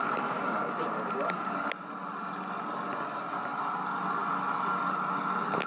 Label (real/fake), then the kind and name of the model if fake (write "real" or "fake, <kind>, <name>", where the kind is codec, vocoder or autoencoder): real